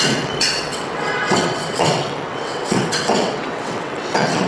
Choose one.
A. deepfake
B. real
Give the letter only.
A